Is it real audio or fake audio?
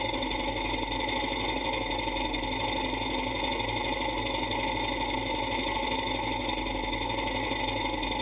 real